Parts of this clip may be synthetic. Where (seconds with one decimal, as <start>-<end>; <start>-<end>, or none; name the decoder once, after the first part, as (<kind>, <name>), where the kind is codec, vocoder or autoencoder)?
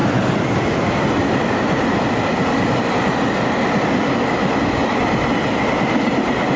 none